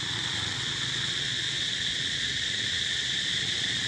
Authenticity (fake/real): fake